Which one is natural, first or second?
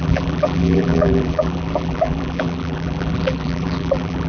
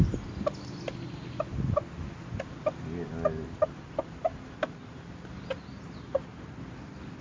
second